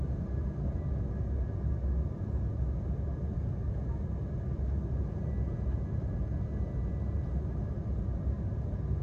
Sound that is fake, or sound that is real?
real